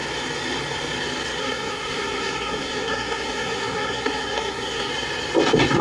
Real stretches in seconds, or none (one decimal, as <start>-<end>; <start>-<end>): 0.0-1.4; 4.9-5.8